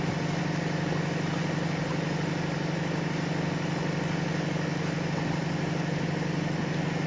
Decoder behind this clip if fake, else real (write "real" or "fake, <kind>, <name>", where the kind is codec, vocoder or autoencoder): real